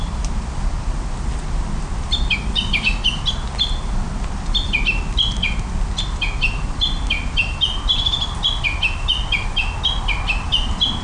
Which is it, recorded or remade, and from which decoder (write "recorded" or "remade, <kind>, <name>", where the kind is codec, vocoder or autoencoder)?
recorded